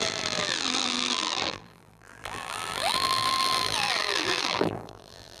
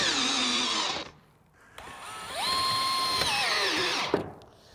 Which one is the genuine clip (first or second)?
second